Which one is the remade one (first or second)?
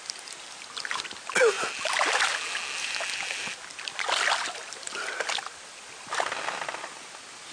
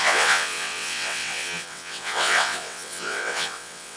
second